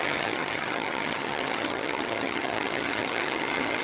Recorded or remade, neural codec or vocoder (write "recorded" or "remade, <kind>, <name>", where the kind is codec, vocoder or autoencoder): remade, vocoder, HiFi-GAN